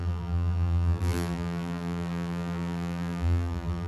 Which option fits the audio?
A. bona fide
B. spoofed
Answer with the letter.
B